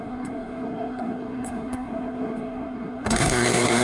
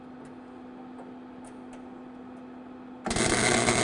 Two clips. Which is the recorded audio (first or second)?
second